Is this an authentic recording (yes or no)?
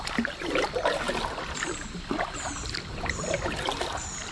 yes